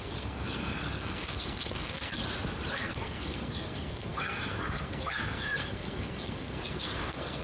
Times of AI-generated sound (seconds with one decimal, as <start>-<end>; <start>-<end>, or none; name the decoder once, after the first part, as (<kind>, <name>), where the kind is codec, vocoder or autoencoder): 0.0-2.2 (codec, SNAC); 2.7-7.4